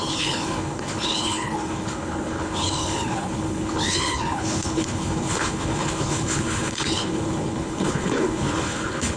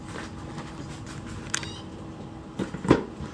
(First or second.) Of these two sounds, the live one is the second